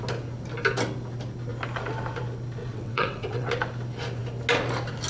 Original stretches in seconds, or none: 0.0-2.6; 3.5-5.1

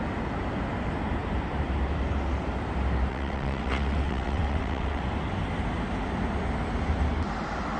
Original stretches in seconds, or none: 0.0-3.1; 5.0-7.8

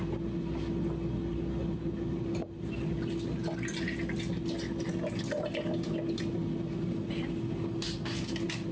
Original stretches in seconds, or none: 0.0-8.7

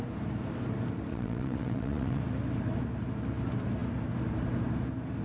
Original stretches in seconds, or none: 0.0-1.1; 2.2-5.2